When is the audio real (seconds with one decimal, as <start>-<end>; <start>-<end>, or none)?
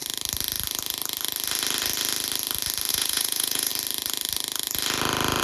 0.0-2.9; 3.7-5.4